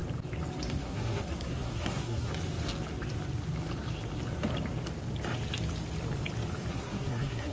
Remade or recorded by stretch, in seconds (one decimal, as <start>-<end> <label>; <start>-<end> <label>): 0.0-0.7 recorded; 0.7-2.3 remade; 2.3-6.7 recorded; 6.7-7.5 remade